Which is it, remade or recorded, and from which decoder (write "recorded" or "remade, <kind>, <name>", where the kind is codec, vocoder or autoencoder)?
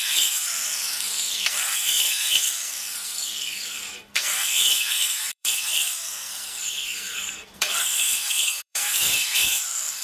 remade, codec, SNAC